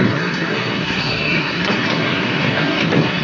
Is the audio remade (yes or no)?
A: yes